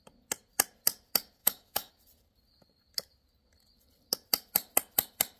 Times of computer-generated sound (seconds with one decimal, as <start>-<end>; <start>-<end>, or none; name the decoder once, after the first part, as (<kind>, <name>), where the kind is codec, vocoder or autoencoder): 1.4-1.9 (autoencoder, DAC-VAE)